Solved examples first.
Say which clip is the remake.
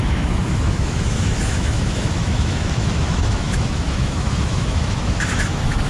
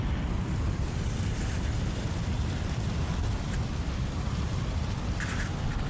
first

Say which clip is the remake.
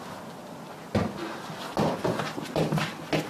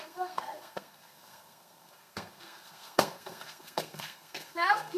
second